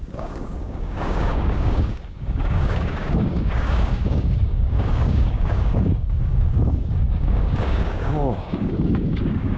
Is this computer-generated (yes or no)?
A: yes